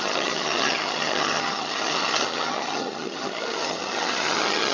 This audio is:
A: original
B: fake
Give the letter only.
B